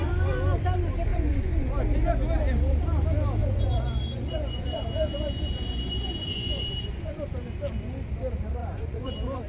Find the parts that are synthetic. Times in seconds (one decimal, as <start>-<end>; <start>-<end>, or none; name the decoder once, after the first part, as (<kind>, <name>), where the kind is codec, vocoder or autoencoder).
1.1-1.7 (vocoder, Vocos); 3.4-7.2; 8.6-9.1